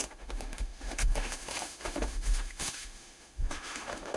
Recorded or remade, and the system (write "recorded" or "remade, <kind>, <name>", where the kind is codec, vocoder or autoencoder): remade, autoencoder, DAC-VAE